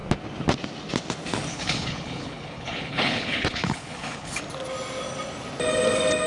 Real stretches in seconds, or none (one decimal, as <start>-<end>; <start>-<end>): 0.0-1.5; 4.4-6.3